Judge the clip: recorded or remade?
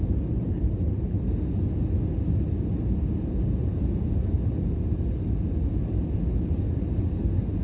recorded